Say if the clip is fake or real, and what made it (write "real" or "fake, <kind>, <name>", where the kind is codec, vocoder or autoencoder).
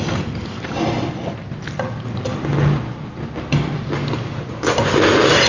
real